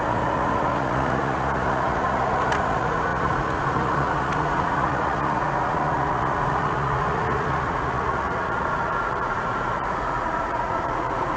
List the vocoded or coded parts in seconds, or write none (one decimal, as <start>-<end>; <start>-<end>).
0.0-11.4